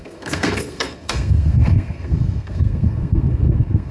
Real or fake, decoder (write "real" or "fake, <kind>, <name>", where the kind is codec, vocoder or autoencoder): fake, codec, SNAC